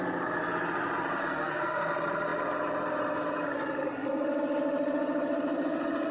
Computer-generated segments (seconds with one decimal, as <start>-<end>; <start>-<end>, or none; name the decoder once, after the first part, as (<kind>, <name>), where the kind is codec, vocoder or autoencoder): 1.2-1.9 (codec, SNAC)